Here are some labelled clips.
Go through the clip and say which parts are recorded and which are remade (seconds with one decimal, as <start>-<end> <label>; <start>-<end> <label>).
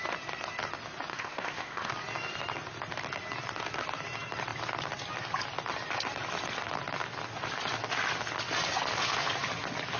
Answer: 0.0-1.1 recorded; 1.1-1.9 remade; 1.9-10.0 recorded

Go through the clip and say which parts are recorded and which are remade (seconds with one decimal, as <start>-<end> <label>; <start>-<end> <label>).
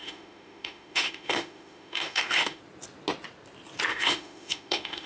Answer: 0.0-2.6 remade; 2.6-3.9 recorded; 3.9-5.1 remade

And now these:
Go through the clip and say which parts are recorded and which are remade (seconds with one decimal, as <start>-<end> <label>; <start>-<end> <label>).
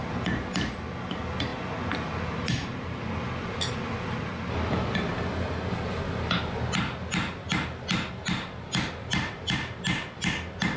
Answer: 0.0-10.8 recorded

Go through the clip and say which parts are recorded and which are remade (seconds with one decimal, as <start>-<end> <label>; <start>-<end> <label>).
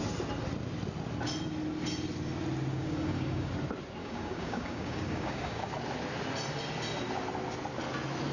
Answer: 0.0-2.7 recorded; 2.7-3.5 remade; 3.5-4.0 recorded; 4.0-5.7 remade; 5.7-8.3 recorded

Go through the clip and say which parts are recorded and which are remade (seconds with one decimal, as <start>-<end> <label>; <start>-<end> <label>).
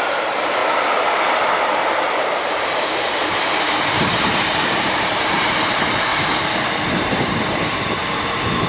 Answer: 0.0-0.6 remade; 0.6-2.2 recorded; 2.2-6.1 remade; 6.1-7.0 recorded; 7.0-8.7 remade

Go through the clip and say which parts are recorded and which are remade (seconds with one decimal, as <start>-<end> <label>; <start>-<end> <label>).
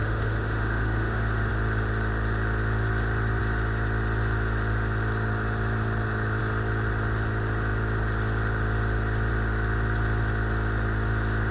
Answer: 0.0-1.5 remade; 1.5-11.5 recorded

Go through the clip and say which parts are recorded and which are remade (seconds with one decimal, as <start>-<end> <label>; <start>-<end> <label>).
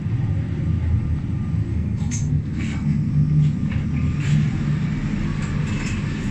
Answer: 0.0-1.7 recorded; 1.7-3.1 remade; 3.1-6.3 recorded